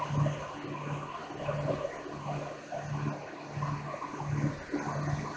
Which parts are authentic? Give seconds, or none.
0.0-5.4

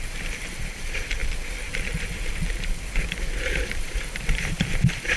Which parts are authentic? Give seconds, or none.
none

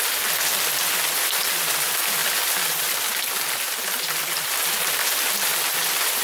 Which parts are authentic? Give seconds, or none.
0.0-6.2